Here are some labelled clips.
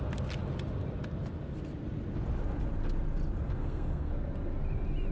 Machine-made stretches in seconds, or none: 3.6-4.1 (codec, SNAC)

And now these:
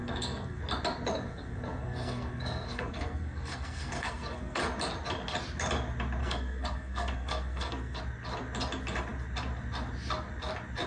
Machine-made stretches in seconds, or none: 0.0-0.6 (codec, SNAC); 1.1-4.6; 6.2-8.0

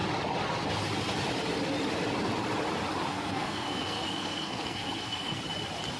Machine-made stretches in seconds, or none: 3.1-5.4 (codec, SNAC)